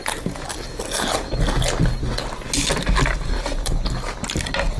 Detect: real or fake real